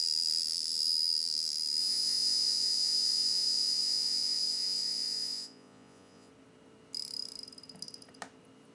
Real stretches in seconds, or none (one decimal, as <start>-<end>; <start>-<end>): 0.0-1.8; 6.3-8.7